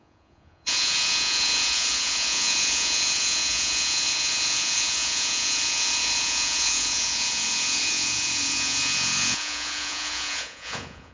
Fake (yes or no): yes